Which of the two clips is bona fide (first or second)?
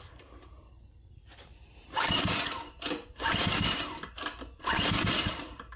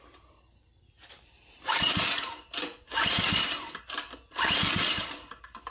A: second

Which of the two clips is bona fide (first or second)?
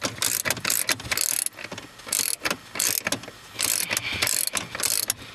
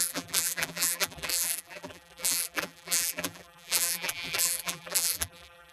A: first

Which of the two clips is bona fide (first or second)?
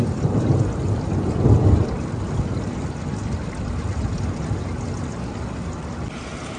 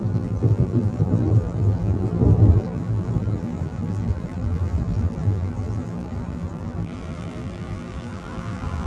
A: first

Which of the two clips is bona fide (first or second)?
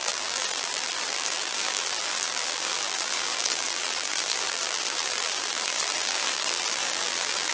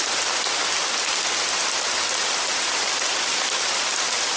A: second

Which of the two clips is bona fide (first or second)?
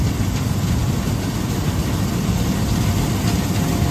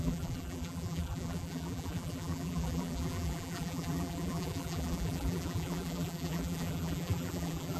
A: first